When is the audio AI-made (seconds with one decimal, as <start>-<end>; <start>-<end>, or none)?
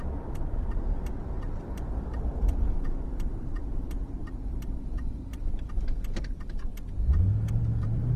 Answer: 0.0-6.7; 7.5-8.2